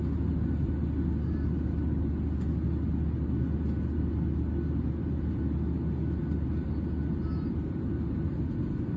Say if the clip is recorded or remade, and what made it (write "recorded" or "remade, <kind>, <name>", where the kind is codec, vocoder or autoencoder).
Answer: recorded